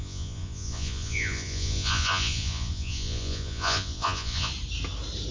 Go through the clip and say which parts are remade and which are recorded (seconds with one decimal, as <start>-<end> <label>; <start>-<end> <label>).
0.0-4.5 remade; 4.5-5.3 recorded